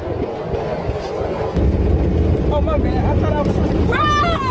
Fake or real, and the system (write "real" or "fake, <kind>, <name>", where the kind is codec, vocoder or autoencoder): real